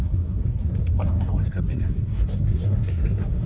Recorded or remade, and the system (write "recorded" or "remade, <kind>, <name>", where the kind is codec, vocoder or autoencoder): remade, codec, SNAC